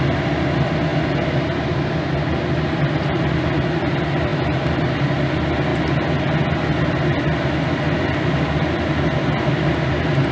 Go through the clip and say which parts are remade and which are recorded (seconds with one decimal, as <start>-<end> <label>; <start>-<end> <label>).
0.0-10.3 recorded